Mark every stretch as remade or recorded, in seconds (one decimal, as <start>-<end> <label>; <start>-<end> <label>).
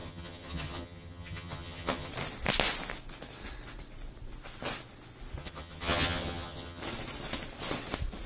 0.0-2.1 remade; 2.1-5.4 recorded; 5.4-6.8 remade; 6.8-8.3 recorded